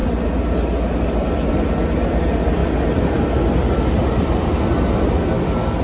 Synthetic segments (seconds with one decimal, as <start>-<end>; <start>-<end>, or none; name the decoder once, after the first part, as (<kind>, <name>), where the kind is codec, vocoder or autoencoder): none